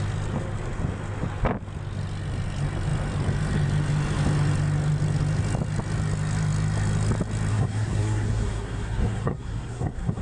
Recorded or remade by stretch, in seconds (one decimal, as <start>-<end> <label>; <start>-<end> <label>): 0.0-7.5 recorded; 7.5-10.2 remade